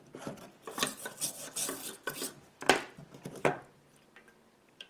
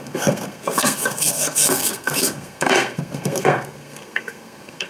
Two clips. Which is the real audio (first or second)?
first